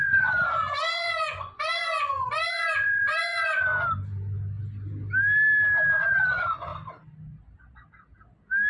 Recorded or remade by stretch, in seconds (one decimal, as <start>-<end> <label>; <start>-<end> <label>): 0.0-3.7 remade; 3.7-5.9 recorded; 5.9-6.7 remade; 6.7-8.7 recorded